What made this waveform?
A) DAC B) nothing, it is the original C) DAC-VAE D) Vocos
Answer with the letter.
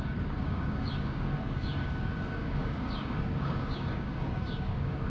A